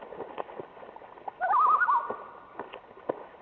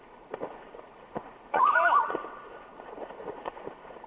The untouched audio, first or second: first